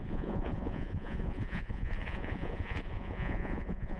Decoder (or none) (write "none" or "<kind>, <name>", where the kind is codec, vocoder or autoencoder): vocoder, Vocos